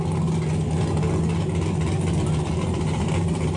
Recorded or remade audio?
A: recorded